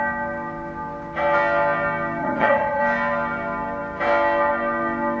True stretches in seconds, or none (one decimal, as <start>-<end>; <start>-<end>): 0.0-2.2; 2.8-5.2